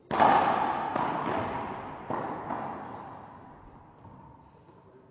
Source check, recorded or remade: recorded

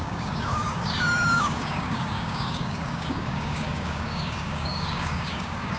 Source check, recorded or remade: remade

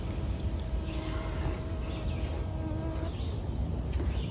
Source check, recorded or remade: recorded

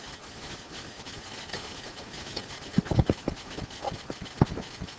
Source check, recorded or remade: recorded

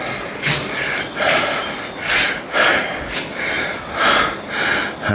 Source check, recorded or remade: recorded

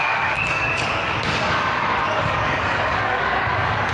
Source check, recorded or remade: remade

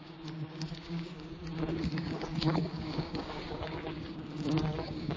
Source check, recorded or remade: remade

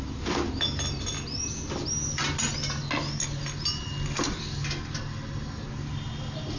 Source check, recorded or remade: recorded